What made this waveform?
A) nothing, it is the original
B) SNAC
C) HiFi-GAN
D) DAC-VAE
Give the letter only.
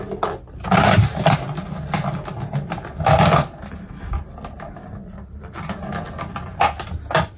A